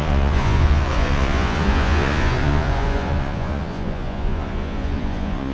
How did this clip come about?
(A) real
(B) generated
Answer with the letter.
B